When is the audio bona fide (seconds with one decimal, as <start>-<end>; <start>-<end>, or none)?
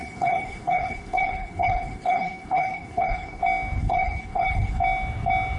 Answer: 3.4-3.8; 4.8-5.6